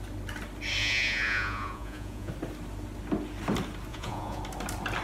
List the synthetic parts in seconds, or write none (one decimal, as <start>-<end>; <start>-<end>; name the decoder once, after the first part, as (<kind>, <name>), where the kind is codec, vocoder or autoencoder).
0.8-2.3 (vocoder, Vocos); 3.9-4.4